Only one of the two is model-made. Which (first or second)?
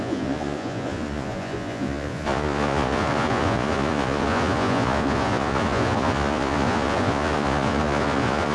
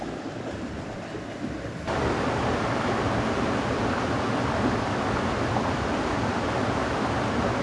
first